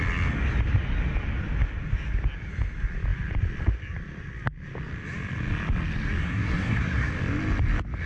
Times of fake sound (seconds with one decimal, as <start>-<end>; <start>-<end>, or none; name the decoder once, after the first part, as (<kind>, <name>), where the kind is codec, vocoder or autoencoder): 6.2-7.1 (codec, SNAC)